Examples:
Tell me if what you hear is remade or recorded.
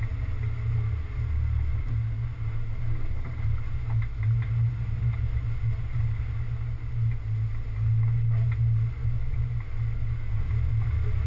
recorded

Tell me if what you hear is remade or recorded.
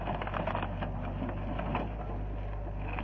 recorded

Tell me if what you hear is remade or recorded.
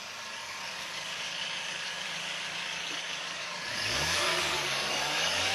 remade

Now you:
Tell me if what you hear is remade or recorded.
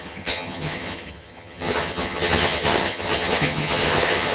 remade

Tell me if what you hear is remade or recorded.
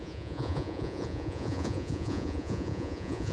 remade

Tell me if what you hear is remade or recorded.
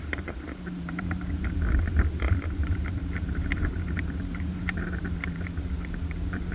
remade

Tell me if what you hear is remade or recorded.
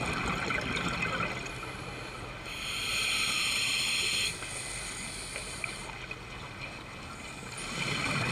recorded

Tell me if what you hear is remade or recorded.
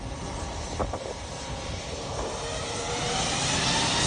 recorded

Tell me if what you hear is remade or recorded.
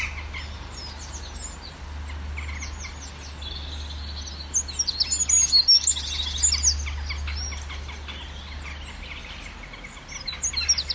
recorded